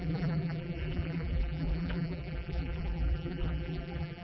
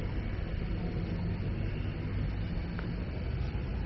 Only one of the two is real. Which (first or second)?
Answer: second